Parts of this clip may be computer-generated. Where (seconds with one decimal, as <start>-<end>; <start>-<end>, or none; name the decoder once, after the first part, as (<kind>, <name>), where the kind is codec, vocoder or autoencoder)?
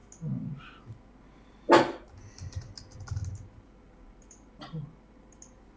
none